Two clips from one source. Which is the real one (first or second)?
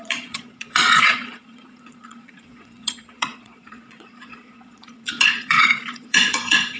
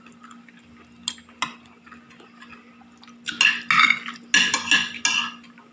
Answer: second